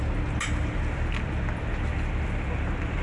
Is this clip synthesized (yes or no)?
no